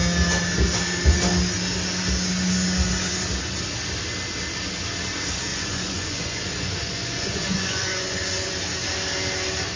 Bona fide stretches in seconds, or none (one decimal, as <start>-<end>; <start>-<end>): 0.0-5.5; 8.5-9.8

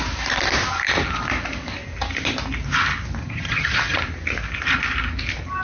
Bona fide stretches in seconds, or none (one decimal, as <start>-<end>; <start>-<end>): 0.0-3.2; 4.0-5.6

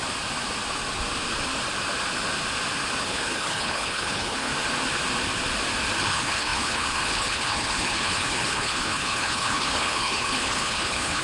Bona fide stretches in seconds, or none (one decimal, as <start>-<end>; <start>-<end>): 0.0-3.0; 4.5-6.0

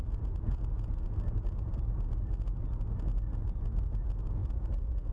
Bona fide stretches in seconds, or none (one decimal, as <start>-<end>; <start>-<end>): 1.7-3.8

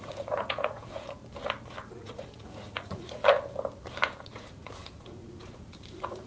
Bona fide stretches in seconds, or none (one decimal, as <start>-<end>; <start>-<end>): 1.2-1.9; 3.2-4.2

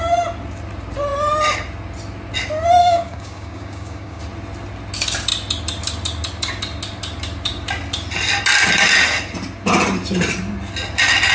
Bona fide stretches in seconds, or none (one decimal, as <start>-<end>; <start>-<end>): 0.0-2.8; 4.2-11.3